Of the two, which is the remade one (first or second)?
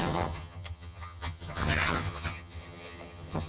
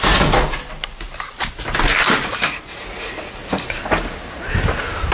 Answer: first